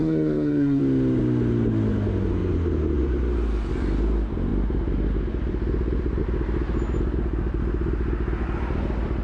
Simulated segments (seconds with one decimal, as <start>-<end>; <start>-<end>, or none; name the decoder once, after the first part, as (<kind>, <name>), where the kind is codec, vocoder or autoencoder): 0.0-0.8 (codec, SNAC)